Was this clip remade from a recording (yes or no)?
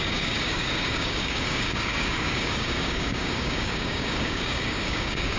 yes